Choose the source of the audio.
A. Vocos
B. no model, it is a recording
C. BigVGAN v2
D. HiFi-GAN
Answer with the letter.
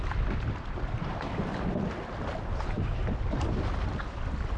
B